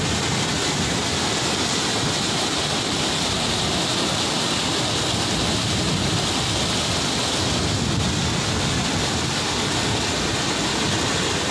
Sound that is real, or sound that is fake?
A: real